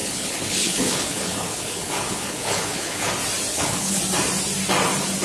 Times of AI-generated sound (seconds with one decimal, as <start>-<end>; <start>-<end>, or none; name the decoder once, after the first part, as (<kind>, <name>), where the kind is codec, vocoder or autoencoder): 0.0-3.1 (codec, HILCodec); 3.5-4.0